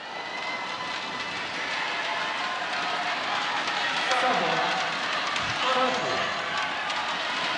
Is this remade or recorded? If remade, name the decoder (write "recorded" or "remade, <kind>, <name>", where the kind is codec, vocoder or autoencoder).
recorded